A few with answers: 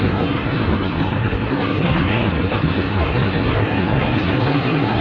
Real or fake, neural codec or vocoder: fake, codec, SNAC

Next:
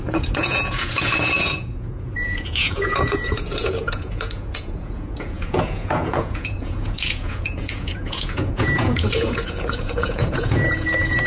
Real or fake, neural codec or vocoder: fake, vocoder, Vocos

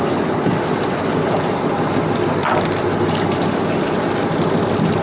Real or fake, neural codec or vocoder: real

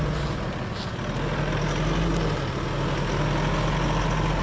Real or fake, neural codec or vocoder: real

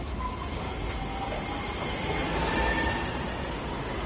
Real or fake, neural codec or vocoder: real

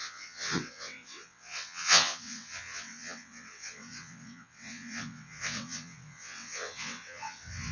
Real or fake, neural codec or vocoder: fake, vocoder, WaveNeXt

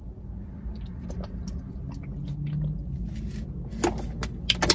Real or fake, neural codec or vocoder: real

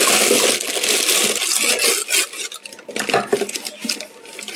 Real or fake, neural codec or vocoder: real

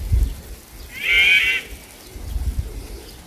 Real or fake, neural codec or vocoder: real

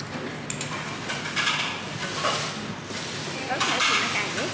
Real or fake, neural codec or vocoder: real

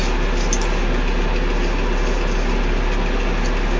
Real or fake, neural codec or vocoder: real